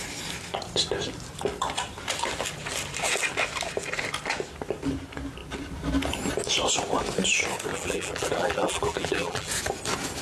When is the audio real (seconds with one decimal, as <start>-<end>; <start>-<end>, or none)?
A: 0.0-7.7; 9.5-10.2